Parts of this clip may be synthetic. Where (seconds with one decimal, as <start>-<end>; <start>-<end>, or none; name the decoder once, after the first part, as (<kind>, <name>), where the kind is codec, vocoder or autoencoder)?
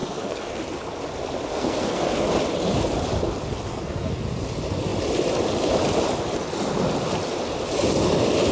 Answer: 0.0-0.6 (codec, SNAC); 1.5-2.3; 3.7-4.2